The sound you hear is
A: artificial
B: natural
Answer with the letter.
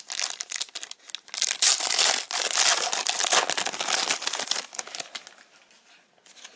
B